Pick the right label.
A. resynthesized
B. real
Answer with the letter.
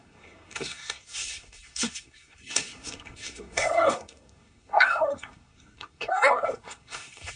A